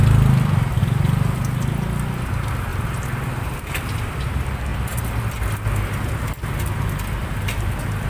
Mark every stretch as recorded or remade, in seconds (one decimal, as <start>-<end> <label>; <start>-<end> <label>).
0.0-2.7 recorded; 2.7-3.7 remade; 3.7-7.2 recorded; 7.2-8.1 remade